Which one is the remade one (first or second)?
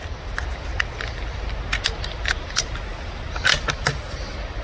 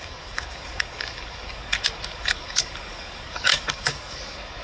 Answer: second